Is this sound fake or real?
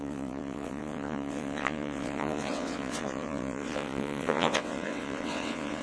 fake